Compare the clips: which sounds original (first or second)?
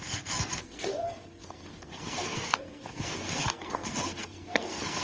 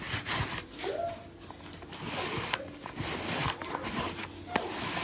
second